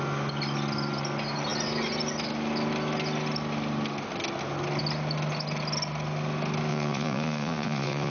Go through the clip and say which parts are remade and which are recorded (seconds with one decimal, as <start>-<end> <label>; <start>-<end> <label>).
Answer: 0.0-6.7 recorded; 6.7-8.1 remade